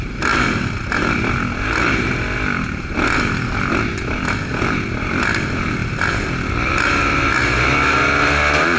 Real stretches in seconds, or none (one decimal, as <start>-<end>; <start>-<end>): 0.0-5.8; 6.8-8.8